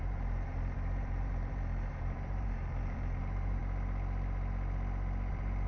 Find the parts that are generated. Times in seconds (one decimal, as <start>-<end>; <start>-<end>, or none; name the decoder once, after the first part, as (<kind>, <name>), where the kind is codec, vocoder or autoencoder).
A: 0.0-3.6 (vocoder, BigVGAN v2); 5.3-5.7